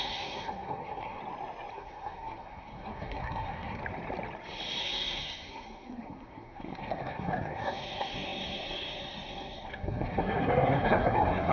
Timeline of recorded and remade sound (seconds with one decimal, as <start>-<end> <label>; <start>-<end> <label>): 0.0-1.2 remade; 1.2-1.7 recorded; 1.7-3.8 remade; 3.8-4.8 recorded; 4.8-11.5 remade